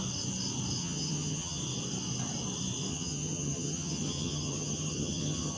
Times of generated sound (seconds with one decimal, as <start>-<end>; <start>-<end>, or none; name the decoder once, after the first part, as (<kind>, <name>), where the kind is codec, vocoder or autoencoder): 0.8-1.6 (vocoder, HiFi-GAN); 2.9-5.6